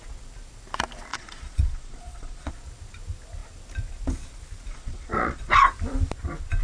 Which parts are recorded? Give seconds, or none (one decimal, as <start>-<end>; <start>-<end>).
0.0-1.1; 2.5-4.7; 5.5-6.6